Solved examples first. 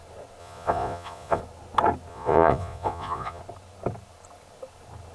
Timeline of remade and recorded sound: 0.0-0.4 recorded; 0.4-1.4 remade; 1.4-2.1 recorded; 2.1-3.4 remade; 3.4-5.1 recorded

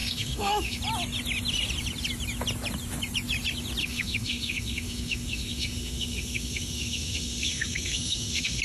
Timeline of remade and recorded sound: 0.0-0.8 remade; 0.8-3.8 recorded; 3.8-8.6 remade

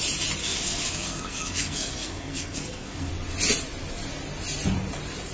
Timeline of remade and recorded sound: 0.0-0.4 recorded; 0.4-3.1 remade; 3.1-5.3 recorded

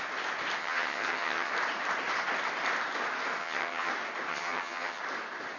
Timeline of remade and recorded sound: 0.0-0.6 recorded; 0.6-1.5 remade; 1.5-3.4 recorded; 3.4-3.9 remade; 3.9-4.3 recorded; 4.3-5.0 remade; 5.0-5.6 recorded

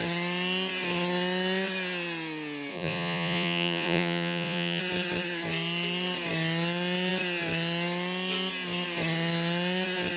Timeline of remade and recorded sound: 0.0-2.7 recorded; 2.7-4.8 remade; 4.8-10.2 recorded